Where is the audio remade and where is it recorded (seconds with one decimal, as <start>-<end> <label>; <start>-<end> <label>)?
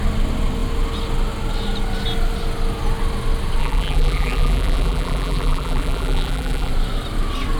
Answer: 0.0-3.6 recorded; 3.6-6.7 remade; 6.7-7.6 recorded